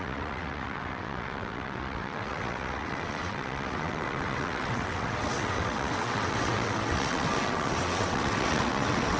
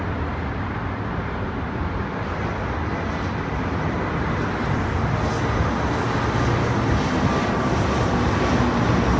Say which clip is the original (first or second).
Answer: second